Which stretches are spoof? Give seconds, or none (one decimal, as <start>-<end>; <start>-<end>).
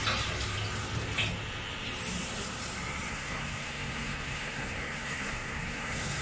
3.1-6.2